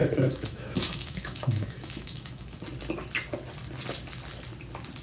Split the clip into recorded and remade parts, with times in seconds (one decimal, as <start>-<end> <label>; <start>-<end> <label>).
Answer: 0.0-2.6 remade; 2.6-5.0 recorded